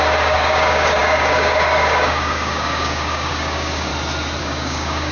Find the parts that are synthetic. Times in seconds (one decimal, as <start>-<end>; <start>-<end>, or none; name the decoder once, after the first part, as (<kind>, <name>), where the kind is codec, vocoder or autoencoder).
0.0-3.9 (codec, DAC); 4.4-5.1